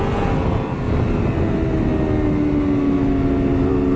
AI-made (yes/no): no